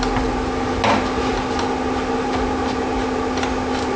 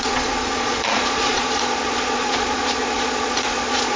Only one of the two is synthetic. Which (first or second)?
second